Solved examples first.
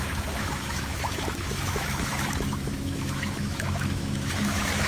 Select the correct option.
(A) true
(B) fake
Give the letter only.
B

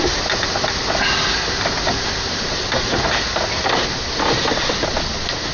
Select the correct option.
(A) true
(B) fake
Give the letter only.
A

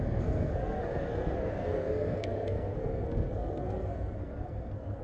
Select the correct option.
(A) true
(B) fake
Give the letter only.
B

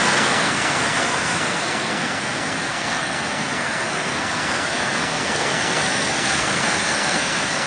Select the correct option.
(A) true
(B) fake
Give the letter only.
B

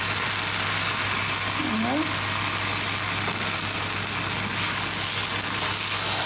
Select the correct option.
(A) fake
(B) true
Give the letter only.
B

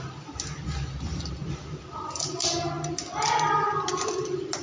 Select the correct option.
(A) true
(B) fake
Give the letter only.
A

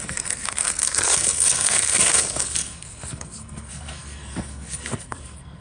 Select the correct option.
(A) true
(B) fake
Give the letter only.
B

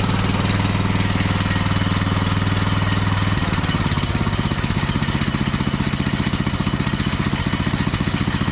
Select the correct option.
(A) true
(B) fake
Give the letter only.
A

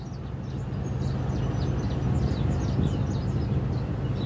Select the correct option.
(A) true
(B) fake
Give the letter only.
A